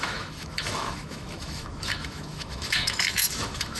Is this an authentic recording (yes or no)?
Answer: no